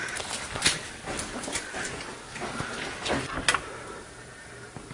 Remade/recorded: recorded